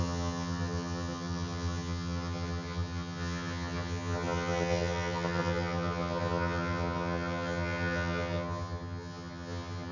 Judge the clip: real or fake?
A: fake